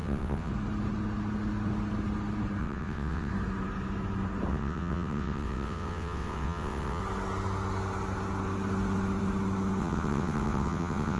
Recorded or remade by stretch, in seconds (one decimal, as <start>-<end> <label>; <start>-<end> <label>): 0.0-0.5 remade; 0.5-2.6 recorded; 2.6-3.3 remade; 3.3-4.5 recorded; 4.5-7.0 remade; 7.0-9.8 recorded; 9.8-11.2 remade